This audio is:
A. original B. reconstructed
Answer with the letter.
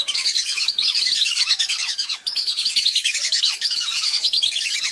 B